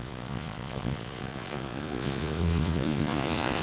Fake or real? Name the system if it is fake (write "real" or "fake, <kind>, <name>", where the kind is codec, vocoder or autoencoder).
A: fake, vocoder, Vocos